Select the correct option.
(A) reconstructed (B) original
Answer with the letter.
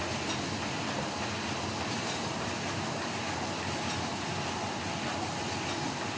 B